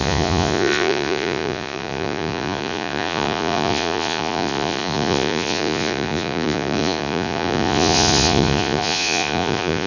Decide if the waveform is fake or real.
fake